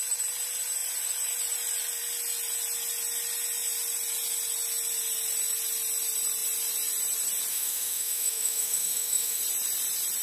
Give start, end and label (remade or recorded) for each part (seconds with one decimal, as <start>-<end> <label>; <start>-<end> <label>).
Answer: 0.0-7.5 recorded; 7.5-9.4 remade; 9.4-10.2 recorded